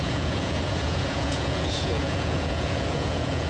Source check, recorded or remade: remade